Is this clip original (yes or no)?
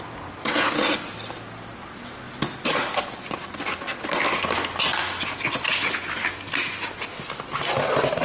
yes